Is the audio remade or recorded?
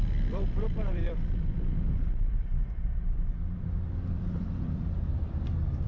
remade